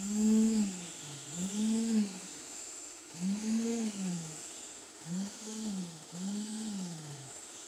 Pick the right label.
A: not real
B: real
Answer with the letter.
A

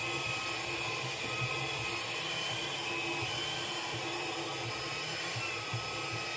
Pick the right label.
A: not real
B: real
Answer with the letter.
B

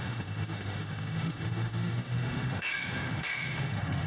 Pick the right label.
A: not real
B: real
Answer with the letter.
A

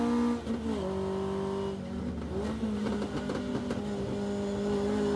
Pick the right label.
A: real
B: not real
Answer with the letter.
A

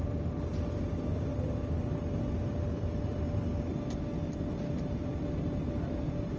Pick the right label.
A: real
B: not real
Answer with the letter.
A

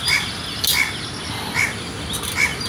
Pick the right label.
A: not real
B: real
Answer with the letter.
B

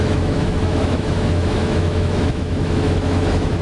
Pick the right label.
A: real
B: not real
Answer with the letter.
B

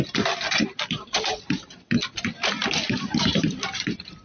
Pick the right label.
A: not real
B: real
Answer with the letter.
B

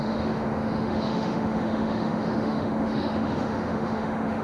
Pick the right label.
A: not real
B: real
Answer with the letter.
A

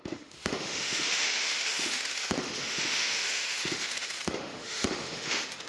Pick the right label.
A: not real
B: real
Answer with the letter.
A